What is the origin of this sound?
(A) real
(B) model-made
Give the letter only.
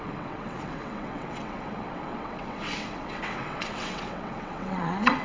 B